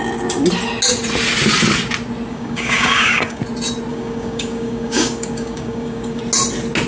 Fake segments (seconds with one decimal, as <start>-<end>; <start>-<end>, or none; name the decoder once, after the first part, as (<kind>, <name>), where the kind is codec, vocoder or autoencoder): 2.3-3.4 (codec, DAC); 3.9-6.2